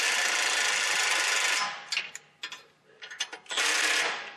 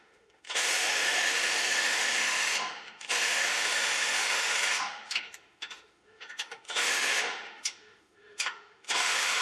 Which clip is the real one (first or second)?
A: first